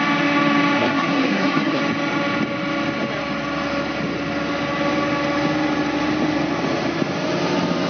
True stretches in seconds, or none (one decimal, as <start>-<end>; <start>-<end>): 0.0-0.8; 1.8-7.9